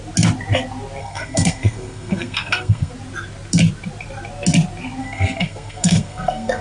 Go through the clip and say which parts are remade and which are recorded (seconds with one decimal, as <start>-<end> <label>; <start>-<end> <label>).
0.0-1.0 recorded; 1.0-2.9 remade; 2.9-5.0 recorded; 5.0-6.6 remade